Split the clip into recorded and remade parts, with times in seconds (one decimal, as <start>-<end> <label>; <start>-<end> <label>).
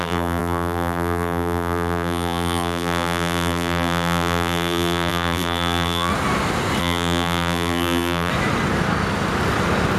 0.0-6.1 remade; 6.1-6.8 recorded; 6.8-8.3 remade; 8.3-10.0 recorded